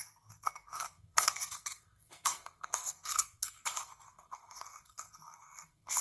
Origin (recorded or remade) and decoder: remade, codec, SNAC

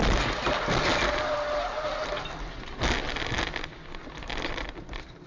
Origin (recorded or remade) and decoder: recorded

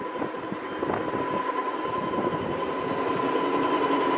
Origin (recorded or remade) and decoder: recorded